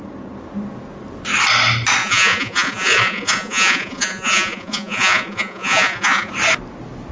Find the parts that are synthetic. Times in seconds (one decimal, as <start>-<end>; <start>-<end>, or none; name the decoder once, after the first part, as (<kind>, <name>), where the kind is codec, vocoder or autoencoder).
2.0-6.3 (vocoder, Vocos)